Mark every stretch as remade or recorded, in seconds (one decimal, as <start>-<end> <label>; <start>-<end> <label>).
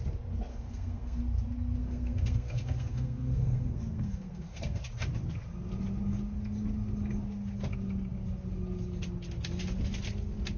0.0-0.5 recorded; 0.5-1.2 remade; 1.2-1.8 recorded; 1.8-4.8 remade; 4.8-10.6 recorded